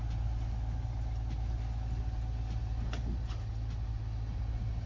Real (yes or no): yes